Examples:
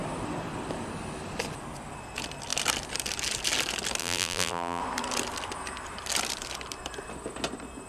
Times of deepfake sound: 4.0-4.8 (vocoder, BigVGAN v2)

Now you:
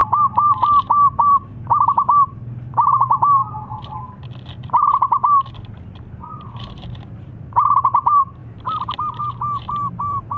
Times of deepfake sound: 0.0-3.4 (vocoder, BigVGAN v2); 6.6-8.4; 9.2-10.4